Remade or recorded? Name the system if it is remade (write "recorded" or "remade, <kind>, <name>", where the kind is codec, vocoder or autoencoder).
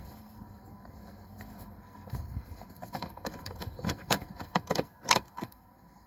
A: remade, codec, SNAC